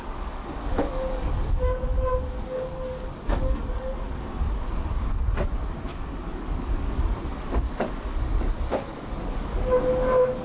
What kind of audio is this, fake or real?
fake